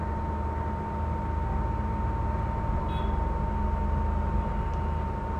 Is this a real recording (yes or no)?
yes